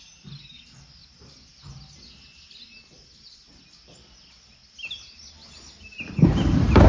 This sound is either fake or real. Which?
real